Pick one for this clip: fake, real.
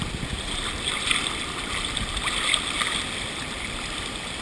real